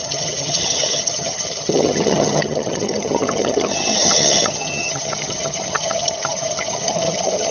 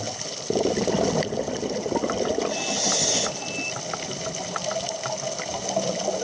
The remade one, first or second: first